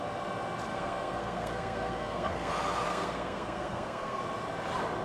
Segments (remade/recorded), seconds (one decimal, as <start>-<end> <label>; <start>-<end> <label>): 0.0-0.7 recorded; 0.7-2.5 remade; 2.5-2.9 recorded; 2.9-4.2 remade; 4.2-5.0 recorded